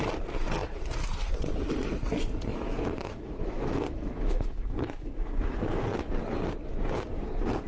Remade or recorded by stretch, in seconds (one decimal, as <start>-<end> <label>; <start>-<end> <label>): 0.0-2.5 recorded; 2.5-5.8 remade; 5.8-7.7 recorded